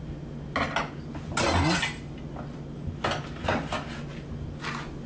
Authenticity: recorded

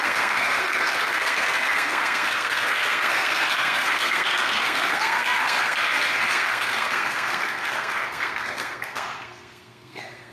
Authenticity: remade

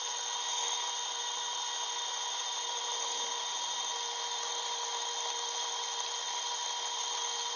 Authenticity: recorded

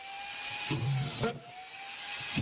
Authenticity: recorded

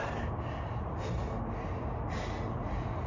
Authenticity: recorded